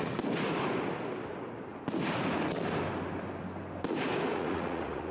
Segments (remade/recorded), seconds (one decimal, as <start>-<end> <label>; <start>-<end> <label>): 0.0-4.3 recorded; 4.3-5.1 remade